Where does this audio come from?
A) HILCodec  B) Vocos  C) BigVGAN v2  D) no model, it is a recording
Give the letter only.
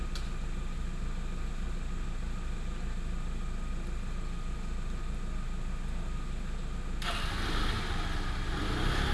D